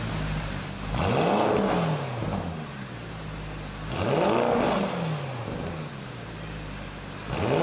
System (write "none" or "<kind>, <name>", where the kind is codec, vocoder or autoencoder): none